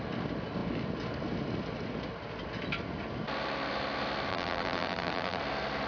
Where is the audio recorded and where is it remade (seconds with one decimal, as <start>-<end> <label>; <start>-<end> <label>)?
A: 0.0-4.3 recorded; 4.3-5.4 remade; 5.4-5.9 recorded

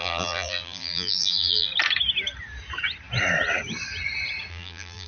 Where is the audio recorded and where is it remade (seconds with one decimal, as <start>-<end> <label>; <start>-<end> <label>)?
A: 0.0-1.7 remade; 1.7-4.5 recorded; 4.5-5.1 remade

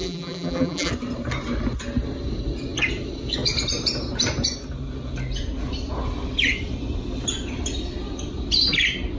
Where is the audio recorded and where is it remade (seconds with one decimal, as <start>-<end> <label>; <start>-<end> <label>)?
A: 0.0-0.9 remade; 0.9-9.2 recorded